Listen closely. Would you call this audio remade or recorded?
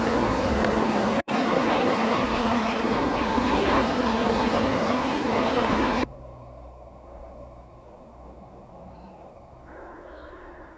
remade